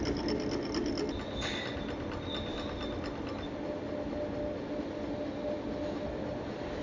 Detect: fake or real real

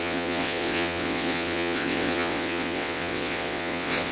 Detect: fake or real fake